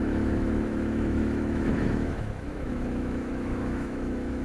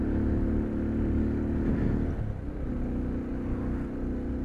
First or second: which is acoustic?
second